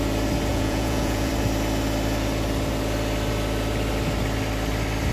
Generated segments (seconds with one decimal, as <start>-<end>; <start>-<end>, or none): 0.5-1.3